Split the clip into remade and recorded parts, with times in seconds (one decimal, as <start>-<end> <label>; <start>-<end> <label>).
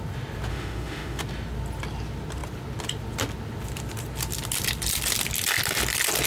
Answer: 0.0-0.5 recorded; 0.5-1.2 remade; 1.2-6.3 recorded